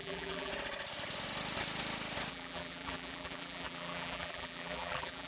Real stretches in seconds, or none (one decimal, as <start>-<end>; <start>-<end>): 0.5-2.3